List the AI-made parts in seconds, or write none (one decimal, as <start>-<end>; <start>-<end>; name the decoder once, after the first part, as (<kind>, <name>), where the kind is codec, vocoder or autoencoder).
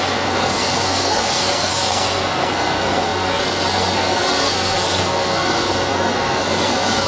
0.0-7.1 (codec, SNAC)